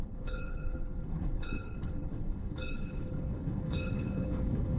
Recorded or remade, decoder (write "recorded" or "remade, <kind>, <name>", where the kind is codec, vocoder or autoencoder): remade, codec, HILCodec